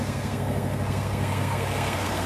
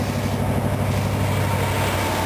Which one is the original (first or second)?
second